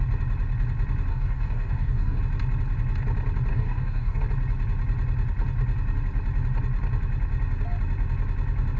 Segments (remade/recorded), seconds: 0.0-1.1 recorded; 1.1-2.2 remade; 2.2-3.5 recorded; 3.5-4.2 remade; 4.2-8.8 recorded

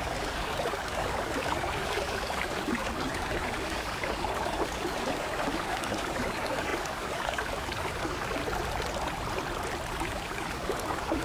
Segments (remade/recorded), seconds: 0.0-8.4 remade; 8.4-9.9 recorded; 9.9-11.2 remade

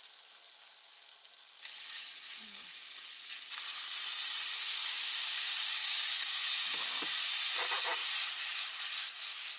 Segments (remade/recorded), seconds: 0.0-4.6 recorded; 4.6-6.4 remade; 6.4-9.6 recorded

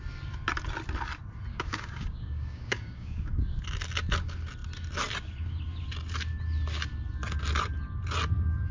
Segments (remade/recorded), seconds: 0.0-1.5 recorded; 1.5-3.6 remade; 3.6-8.7 recorded

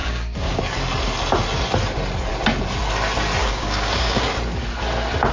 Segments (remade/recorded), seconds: 0.0-0.6 remade; 0.6-3.4 recorded; 3.4-4.3 remade; 4.3-5.3 recorded

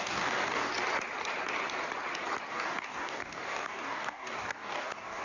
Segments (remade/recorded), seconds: 0.0-0.7 remade; 0.7-2.5 recorded; 2.5-5.2 remade

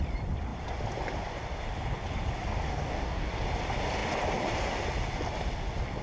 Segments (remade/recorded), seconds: 0.0-2.7 recorded; 2.7-3.3 remade; 3.3-6.0 recorded

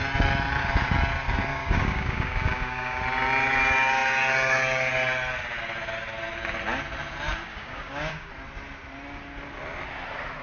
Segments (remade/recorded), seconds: 0.0-1.5 recorded; 1.5-3.0 remade; 3.0-7.5 recorded; 7.5-8.3 remade; 8.3-10.4 recorded